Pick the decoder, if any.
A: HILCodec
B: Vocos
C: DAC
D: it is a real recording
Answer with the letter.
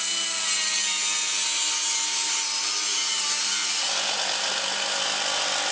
D